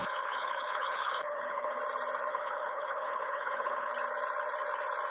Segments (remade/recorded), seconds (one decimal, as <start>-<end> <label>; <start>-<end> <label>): 0.0-1.8 remade; 1.8-2.3 recorded; 2.3-3.9 remade; 3.9-5.1 recorded